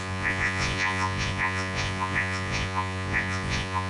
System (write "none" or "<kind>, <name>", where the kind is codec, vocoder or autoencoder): vocoder, Vocos